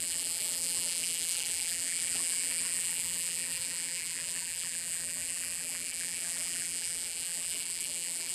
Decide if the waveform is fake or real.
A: fake